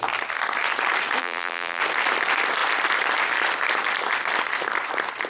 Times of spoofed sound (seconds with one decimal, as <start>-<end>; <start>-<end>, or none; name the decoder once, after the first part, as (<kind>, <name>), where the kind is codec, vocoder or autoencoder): 1.2-1.8 (vocoder, BigVGAN v2)